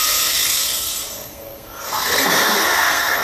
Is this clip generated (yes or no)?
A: yes